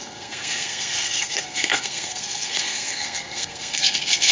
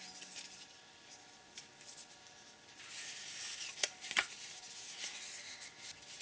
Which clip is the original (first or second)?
second